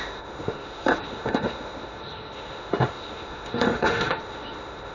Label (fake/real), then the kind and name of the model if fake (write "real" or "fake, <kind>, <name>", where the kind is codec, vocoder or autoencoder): fake, autoencoder, DAC-VAE